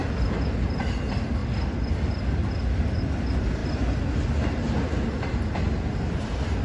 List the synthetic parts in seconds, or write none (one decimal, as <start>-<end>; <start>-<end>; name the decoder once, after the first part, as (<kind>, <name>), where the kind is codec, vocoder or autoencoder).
none